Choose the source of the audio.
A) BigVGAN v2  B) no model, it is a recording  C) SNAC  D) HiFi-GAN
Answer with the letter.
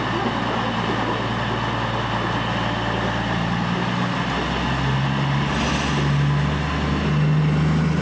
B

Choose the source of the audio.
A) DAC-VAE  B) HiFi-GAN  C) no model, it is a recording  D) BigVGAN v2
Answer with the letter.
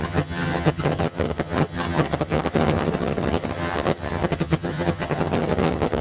B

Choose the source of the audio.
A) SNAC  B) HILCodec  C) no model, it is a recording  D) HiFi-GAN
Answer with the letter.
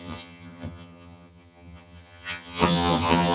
D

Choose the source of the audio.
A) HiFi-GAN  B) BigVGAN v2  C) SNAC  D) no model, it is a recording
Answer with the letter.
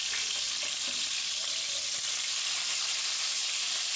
D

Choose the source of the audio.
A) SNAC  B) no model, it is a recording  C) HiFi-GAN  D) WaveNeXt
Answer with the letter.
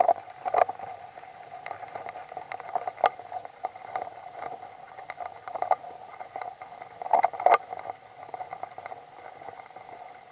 B